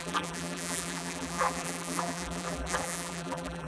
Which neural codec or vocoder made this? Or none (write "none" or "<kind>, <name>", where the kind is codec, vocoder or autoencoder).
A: vocoder, BigVGAN v2